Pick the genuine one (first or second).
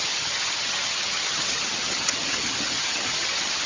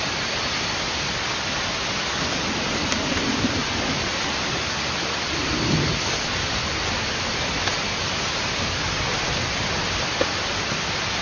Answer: second